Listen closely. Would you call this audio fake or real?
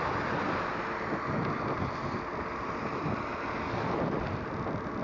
real